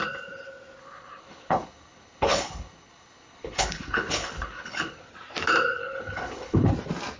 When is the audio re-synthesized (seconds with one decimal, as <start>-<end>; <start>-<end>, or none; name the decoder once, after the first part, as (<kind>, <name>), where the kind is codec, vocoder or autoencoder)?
0.8-5.1 (codec, HILCodec); 5.8-6.7